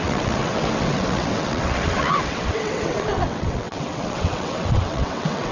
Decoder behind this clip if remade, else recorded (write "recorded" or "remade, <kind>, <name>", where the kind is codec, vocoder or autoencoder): remade, vocoder, WaveNeXt